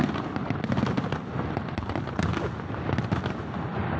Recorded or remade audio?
recorded